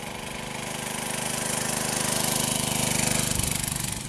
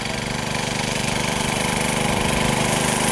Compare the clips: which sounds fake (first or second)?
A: second